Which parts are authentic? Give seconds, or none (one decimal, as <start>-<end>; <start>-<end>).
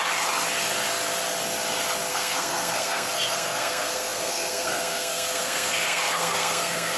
0.0-2.1